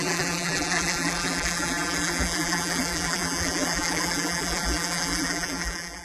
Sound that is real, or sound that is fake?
fake